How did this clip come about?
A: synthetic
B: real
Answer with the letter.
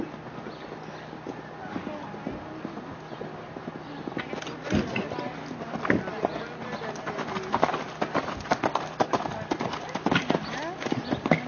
B